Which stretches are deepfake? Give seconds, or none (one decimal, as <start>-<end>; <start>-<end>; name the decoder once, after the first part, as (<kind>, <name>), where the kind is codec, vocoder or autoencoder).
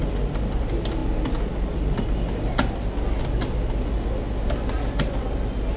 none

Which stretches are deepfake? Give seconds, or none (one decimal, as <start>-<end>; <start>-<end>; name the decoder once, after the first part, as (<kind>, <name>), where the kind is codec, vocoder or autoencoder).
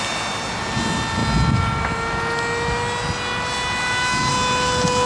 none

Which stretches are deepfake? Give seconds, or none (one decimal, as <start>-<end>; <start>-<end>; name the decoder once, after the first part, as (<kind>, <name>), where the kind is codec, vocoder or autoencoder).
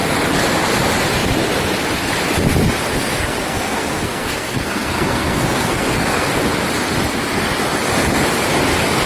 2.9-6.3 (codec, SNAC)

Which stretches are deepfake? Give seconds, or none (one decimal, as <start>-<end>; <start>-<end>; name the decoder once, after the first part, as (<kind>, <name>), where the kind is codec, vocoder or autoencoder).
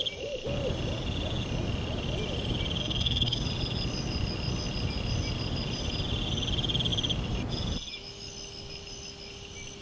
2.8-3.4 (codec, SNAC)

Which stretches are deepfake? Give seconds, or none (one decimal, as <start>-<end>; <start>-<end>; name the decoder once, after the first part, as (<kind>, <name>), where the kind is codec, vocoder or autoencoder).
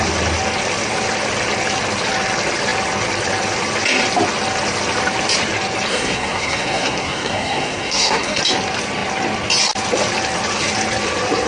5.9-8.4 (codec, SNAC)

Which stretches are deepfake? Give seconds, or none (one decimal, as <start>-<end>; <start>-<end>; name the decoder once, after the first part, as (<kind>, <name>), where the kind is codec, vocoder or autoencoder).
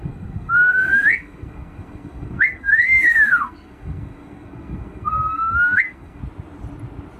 0.0-6.2 (codec, SNAC)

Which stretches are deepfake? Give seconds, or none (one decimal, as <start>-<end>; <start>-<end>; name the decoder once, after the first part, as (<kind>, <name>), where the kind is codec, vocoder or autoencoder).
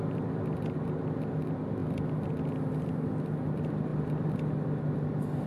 none